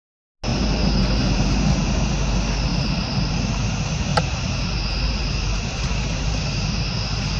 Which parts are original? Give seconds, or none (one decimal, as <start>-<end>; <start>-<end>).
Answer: 0.0-0.5; 2.1-2.7; 3.3-4.1; 6.7-7.4